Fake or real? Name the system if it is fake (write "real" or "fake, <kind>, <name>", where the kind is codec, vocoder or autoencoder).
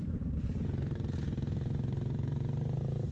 fake, vocoder, BigVGAN v2